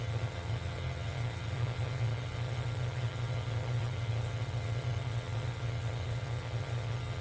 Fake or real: fake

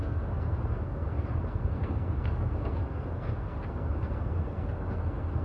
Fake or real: fake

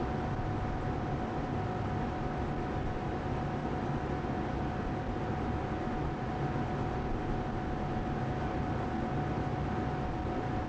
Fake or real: real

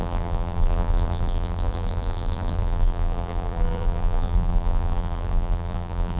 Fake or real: fake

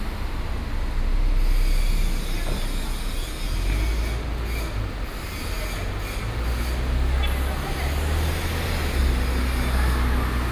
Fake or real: real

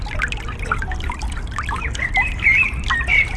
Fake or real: real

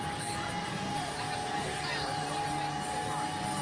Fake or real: real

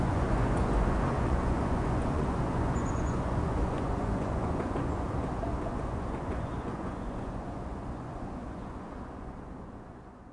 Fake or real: fake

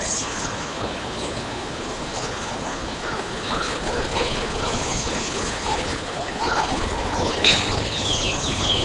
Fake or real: fake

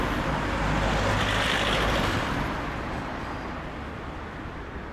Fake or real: real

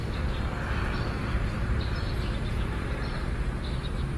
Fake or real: fake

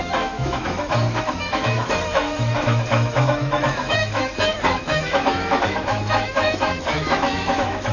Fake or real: fake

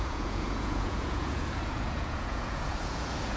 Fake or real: fake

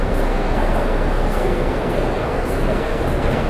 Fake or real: fake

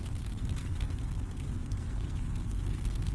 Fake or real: fake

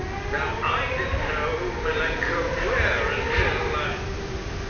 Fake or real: real